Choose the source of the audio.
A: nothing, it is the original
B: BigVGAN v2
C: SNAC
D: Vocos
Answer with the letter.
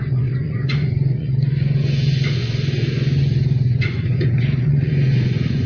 D